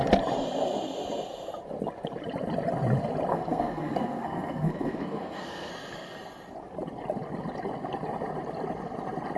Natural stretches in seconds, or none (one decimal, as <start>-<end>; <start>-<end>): 0.0-3.3; 5.7-9.4

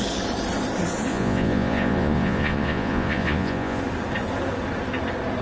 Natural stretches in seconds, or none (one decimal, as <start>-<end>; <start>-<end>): 0.0-1.1; 3.8-5.4